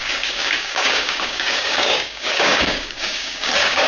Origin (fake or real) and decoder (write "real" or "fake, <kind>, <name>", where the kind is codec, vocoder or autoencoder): fake, codec, DAC